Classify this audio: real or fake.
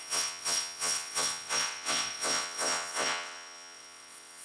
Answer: fake